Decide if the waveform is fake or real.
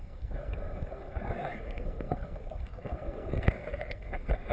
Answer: fake